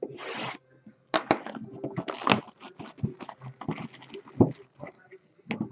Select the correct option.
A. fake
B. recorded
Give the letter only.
B